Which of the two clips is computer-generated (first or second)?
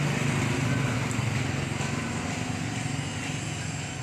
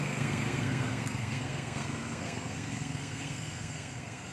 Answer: second